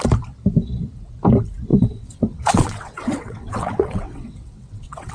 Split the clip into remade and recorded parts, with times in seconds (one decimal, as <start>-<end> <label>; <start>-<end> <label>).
0.0-1.7 recorded; 1.7-5.1 remade